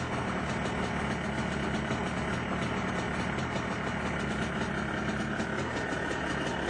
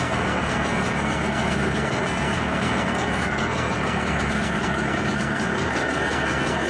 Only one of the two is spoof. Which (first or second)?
second